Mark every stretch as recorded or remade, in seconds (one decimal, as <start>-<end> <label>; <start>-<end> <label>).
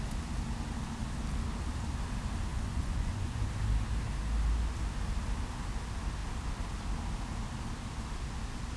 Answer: 0.0-2.5 recorded; 2.5-3.5 remade; 3.5-8.8 recorded